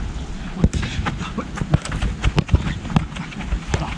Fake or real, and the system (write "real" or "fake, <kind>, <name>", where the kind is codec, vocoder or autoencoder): real